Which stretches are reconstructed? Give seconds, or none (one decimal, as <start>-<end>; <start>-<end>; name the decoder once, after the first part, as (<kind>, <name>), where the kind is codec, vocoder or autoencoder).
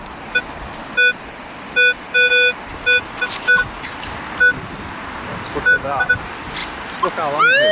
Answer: 5.3-6.1 (vocoder, BigVGAN v2); 6.6-7.1